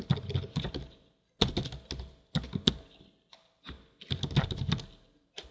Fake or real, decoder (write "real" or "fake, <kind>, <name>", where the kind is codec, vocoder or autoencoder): real